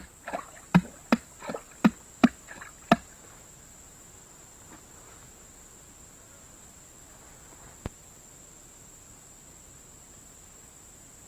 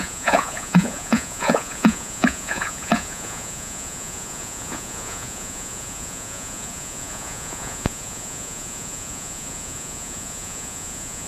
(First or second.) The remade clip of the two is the second